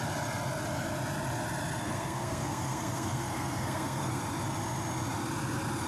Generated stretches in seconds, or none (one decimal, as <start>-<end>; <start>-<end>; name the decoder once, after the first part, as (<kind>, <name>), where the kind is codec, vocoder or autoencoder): 1.8-4.2 (codec, SNAC)